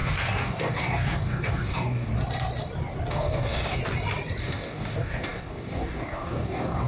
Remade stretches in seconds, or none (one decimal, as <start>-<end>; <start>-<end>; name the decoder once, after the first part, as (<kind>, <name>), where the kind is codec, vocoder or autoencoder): 0.0-2.1 (codec, DAC); 3.1-3.8; 4.4-6.9